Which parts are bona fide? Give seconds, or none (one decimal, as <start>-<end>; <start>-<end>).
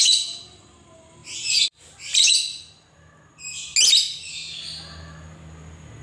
0.0-6.0